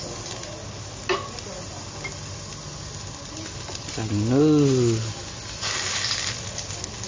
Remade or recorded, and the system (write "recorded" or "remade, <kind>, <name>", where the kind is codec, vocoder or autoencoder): recorded